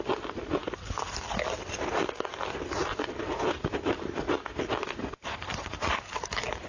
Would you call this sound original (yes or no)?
yes